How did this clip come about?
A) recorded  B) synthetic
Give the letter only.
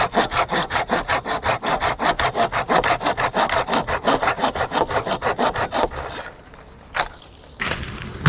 A